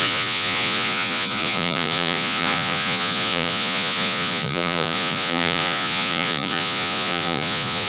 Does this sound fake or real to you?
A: fake